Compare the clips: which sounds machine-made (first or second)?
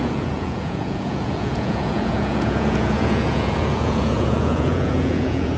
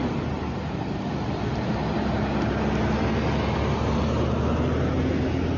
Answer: first